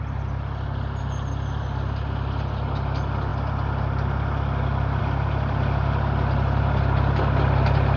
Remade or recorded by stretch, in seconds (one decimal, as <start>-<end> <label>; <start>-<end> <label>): 0.0-8.0 recorded

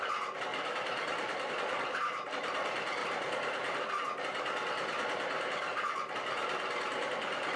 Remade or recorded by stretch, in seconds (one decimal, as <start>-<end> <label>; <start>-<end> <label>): 0.0-0.5 recorded; 0.5-1.5 remade; 1.5-3.0 recorded; 3.0-3.9 remade; 3.9-6.4 recorded; 6.4-7.1 remade; 7.1-7.6 recorded

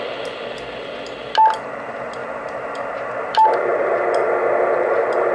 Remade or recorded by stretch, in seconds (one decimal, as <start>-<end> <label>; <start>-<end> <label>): 0.0-2.2 recorded; 2.2-4.1 remade; 4.1-5.3 recorded

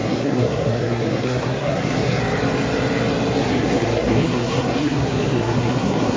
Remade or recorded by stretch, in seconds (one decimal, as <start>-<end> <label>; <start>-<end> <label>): 0.0-2.2 remade; 2.2-3.4 recorded; 3.4-6.2 remade

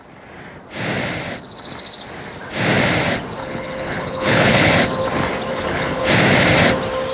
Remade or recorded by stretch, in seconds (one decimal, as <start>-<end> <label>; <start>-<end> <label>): 0.0-3.4 recorded; 3.4-4.7 remade; 4.7-5.5 recorded; 5.5-6.0 remade; 6.0-7.1 recorded

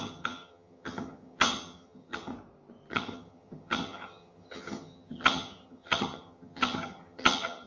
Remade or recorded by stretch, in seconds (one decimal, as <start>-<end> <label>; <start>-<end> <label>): 0.0-2.3 remade; 2.3-2.9 recorded; 2.9-7.7 remade